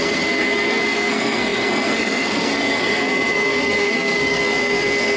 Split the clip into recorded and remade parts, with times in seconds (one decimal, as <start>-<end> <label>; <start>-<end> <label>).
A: 0.0-5.2 remade